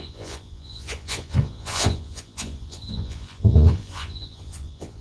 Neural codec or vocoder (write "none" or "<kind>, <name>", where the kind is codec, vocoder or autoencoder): vocoder, Vocos